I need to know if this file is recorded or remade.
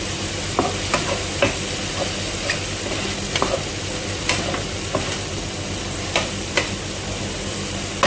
recorded